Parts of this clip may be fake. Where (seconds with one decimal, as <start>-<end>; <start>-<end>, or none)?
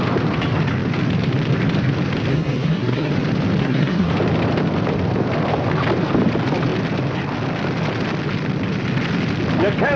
2.3-3.1; 3.6-4.1